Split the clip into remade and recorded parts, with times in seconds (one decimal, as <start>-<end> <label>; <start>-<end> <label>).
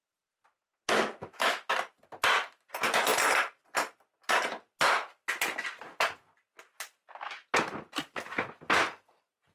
0.0-1.2 recorded; 1.2-1.7 remade; 1.7-9.5 recorded